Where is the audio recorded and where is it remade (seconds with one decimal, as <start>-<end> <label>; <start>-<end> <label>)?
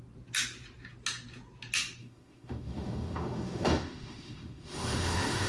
0.0-2.0 recorded; 2.0-5.5 remade